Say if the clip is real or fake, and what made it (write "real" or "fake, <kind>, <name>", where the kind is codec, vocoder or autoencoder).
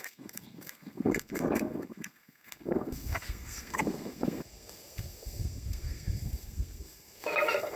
fake, codec, SNAC